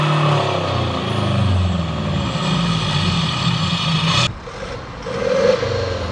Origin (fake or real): real